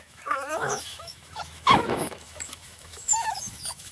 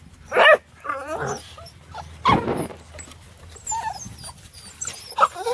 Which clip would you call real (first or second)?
second